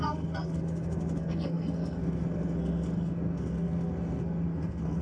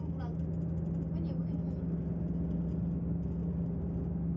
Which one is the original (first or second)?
second